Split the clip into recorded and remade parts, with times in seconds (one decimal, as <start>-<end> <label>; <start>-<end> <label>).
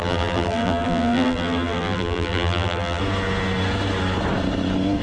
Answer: 0.0-3.0 remade; 3.0-5.0 recorded